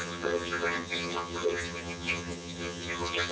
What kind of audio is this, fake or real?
fake